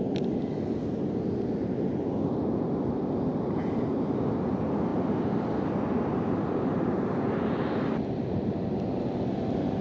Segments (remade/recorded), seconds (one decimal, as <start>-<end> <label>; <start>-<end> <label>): 0.0-9.8 recorded